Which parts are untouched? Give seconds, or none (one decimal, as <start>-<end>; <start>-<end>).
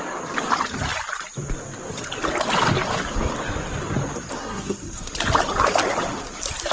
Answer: 0.0-4.4; 5.1-6.7